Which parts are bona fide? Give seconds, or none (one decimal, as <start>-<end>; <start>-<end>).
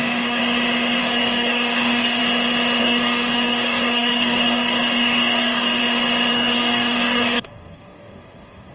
0.4-1.0; 2.2-2.8; 5.8-6.3